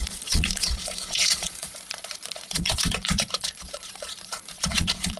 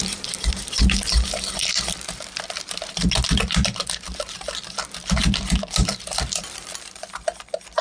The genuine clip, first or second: second